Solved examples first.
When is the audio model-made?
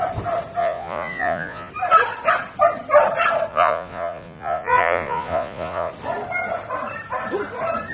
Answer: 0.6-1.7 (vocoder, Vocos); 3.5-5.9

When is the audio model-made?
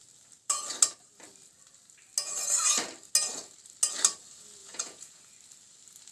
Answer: 4.6-5.3 (vocoder, Vocos)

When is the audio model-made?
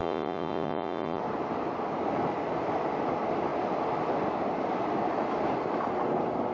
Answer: 0.0-1.2 (vocoder, Vocos)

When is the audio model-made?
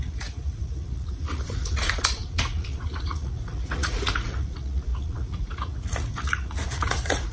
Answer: 0.0-7.3 (vocoder, Vocos)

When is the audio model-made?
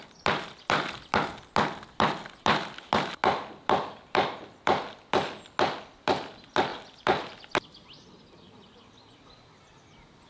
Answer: none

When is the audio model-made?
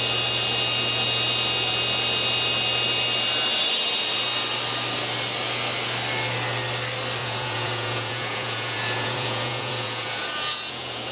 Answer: 7.2-11.1 (vocoder, Vocos)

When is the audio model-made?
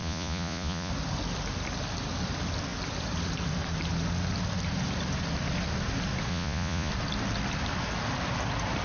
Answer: 0.0-0.9 (vocoder, Vocos); 6.3-6.9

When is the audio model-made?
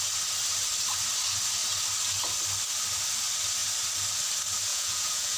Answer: 4.7-5.4 (vocoder, Vocos)